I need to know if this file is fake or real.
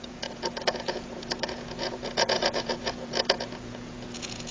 fake